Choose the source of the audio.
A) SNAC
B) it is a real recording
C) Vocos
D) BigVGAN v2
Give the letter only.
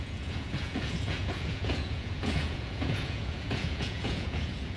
C